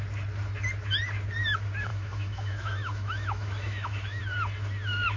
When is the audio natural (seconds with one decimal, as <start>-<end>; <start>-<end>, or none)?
0.0-1.9; 4.2-5.2